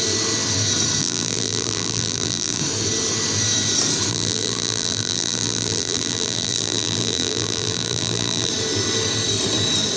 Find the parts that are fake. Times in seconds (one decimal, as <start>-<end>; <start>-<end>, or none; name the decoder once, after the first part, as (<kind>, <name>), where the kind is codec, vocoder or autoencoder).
1.0-2.6 (vocoder, BigVGAN v2); 4.1-8.5